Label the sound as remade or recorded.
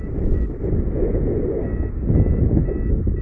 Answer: recorded